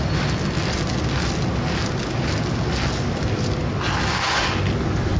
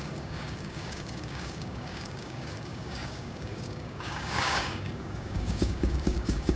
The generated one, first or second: second